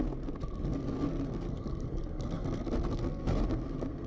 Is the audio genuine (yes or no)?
no